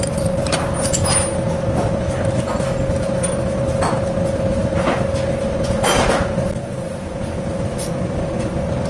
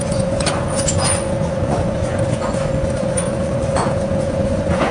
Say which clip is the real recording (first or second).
first